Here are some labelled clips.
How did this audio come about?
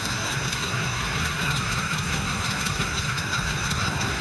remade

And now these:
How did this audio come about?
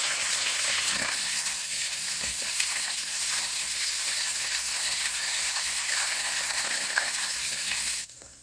remade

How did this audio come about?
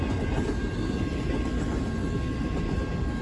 recorded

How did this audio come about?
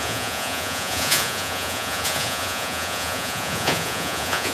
remade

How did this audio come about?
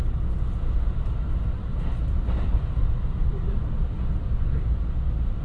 recorded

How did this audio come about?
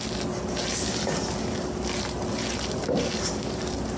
recorded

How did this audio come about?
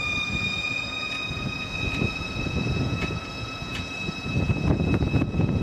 remade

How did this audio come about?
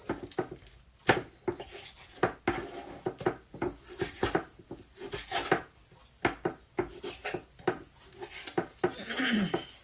recorded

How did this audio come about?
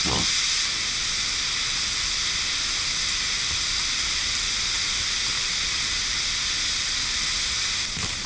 recorded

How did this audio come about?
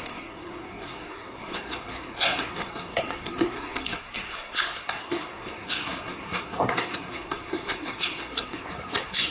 remade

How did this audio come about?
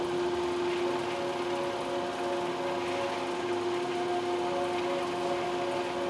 recorded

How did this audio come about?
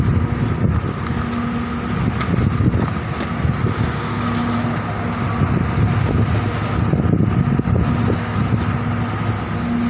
recorded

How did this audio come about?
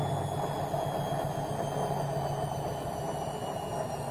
recorded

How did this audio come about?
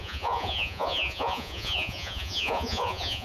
remade